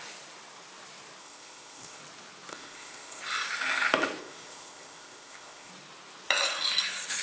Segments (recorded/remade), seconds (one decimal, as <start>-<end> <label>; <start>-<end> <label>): 0.0-1.2 recorded; 1.2-2.0 remade; 2.0-2.5 recorded; 2.5-3.2 remade; 3.2-4.2 recorded; 4.2-5.7 remade; 5.7-7.2 recorded